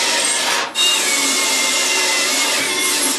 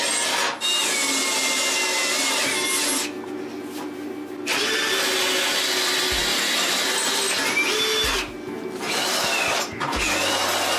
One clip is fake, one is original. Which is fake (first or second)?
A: first